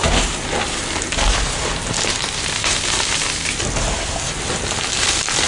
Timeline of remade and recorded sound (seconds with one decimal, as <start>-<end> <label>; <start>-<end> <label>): 0.0-5.5 recorded